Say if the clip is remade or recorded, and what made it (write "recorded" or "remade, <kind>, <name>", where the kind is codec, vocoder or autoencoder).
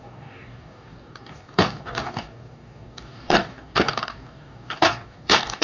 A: remade, codec, DAC